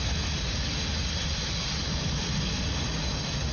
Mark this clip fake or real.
real